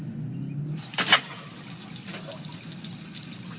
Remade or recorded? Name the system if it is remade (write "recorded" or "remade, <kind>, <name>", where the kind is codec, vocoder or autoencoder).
recorded